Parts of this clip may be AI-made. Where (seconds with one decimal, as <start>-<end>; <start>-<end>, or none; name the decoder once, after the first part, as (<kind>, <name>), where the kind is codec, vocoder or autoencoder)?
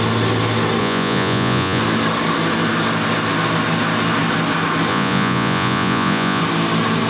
0.8-1.8 (vocoder, Vocos); 4.9-6.4